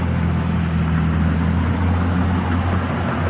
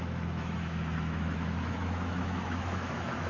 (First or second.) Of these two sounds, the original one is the first